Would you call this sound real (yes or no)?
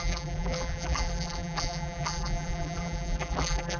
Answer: no